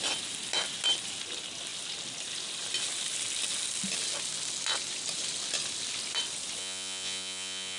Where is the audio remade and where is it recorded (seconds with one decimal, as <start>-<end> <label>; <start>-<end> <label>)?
0.0-6.6 recorded; 6.6-7.8 remade